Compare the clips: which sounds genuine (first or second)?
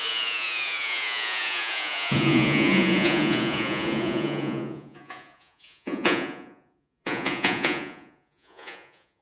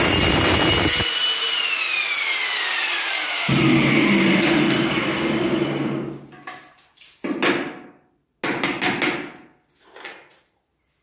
second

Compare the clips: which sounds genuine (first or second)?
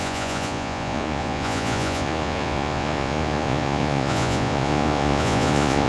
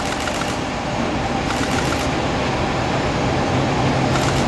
second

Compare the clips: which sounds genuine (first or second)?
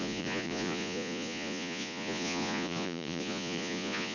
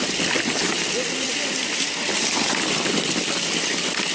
second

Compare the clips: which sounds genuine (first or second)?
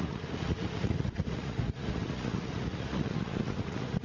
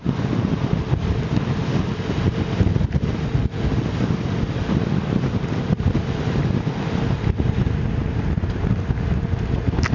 second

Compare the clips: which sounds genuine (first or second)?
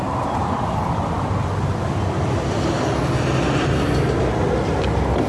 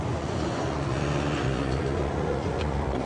first